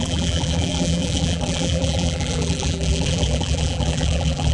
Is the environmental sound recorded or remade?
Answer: remade